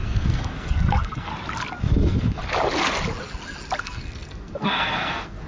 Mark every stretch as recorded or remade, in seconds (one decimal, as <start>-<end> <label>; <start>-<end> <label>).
0.0-1.3 remade; 1.3-1.8 recorded; 1.8-2.4 remade; 2.4-3.8 recorded; 3.8-5.5 remade